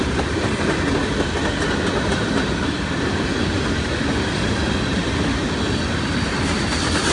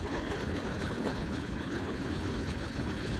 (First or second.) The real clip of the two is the first